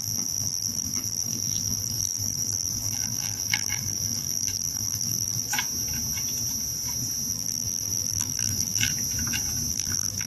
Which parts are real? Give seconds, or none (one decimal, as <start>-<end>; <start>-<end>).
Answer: 5.5-7.3; 8.9-9.7